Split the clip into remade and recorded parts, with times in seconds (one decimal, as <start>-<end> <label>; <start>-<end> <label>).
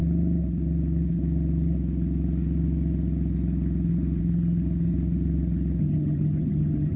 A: 0.0-5.8 recorded; 5.8-7.0 remade